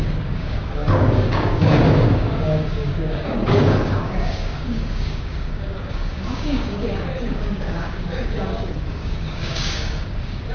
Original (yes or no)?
no